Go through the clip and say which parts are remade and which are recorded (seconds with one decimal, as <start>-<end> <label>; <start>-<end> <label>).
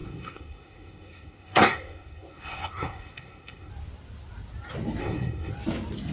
0.0-3.7 remade; 3.7-5.0 recorded; 5.0-5.5 remade; 5.5-6.1 recorded